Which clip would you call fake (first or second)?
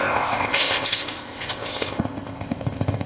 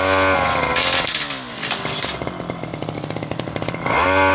first